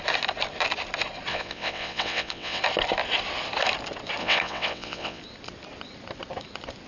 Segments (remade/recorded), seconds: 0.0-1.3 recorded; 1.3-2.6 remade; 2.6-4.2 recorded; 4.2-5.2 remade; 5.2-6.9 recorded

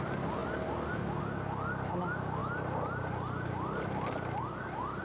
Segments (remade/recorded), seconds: 0.0-5.0 recorded

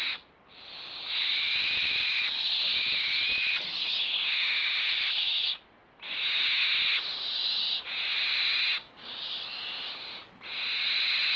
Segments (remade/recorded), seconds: 0.0-11.4 recorded

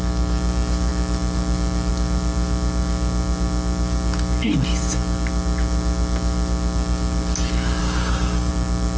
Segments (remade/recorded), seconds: 0.0-7.8 recorded; 7.8-8.5 remade; 8.5-9.0 recorded

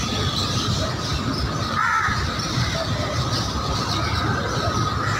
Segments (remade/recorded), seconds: 0.0-5.2 recorded

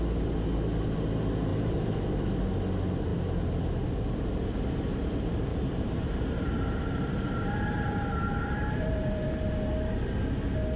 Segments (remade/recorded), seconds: 0.0-1.5 recorded; 1.5-2.0 remade; 2.0-5.5 recorded; 5.5-9.5 remade; 9.5-10.8 recorded

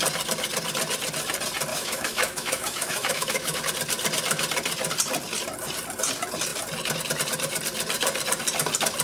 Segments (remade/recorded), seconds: 0.0-1.7 recorded; 1.7-3.6 remade; 3.6-9.0 recorded